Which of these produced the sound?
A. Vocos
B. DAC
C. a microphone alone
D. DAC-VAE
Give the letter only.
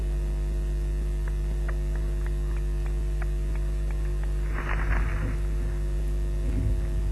C